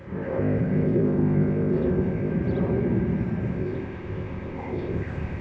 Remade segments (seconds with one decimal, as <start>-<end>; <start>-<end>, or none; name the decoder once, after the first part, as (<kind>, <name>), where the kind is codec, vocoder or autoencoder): 0.0-2.3 (codec, ZipCodec); 3.5-5.4

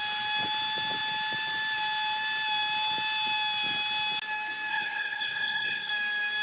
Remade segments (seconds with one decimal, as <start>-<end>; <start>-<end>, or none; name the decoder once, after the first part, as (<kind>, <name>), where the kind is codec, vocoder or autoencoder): 4.7-5.9 (codec, HILCodec)

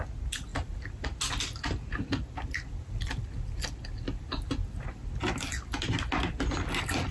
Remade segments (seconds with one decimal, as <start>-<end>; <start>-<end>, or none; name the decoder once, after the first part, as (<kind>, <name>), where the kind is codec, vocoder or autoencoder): none

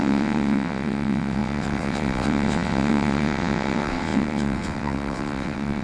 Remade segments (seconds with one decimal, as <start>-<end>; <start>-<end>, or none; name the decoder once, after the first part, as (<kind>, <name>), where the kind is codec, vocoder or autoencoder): 0.0-5.8 (vocoder, WaveNeXt)

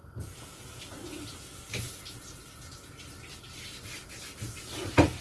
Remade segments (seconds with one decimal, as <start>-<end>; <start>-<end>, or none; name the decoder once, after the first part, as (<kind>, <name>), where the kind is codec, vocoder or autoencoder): none

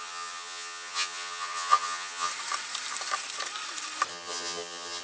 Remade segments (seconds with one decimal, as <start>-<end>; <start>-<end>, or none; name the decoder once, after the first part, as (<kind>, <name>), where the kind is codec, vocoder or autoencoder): 0.0-2.3 (vocoder, HiFi-GAN); 4.1-5.0

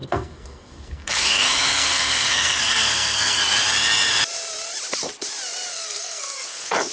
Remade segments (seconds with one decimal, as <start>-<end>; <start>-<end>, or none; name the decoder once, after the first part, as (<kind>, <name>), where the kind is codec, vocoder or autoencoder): 0.0-3.4 (codec, SNAC); 5.7-6.9

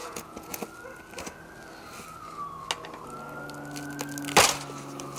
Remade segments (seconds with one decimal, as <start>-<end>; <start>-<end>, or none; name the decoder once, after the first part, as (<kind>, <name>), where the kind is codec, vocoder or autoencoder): 0.0-0.6 (vocoder, Vocos)